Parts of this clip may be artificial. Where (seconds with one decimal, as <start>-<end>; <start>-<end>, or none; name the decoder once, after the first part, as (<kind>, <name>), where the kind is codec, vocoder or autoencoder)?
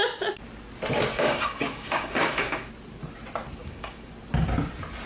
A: 1.1-2.7 (codec, DAC); 3.6-4.1